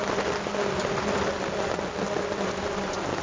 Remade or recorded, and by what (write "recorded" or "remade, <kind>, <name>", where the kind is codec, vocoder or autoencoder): recorded